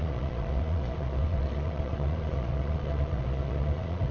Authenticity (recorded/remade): remade